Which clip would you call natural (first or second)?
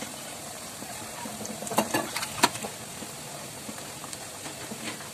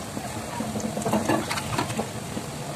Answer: second